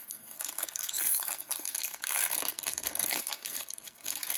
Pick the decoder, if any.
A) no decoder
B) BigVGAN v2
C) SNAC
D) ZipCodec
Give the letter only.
C